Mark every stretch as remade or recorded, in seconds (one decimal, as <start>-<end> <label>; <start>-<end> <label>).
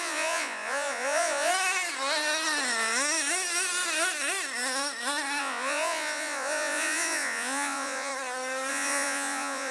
0.0-1.5 remade; 1.5-5.4 recorded; 5.4-8.1 remade; 8.1-8.7 recorded; 8.7-9.7 remade